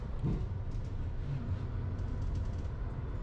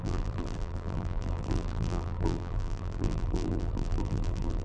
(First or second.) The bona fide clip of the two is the first